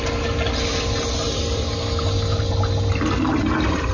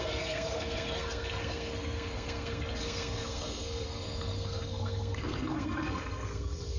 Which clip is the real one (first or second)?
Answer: first